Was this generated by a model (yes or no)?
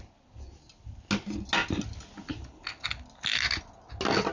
no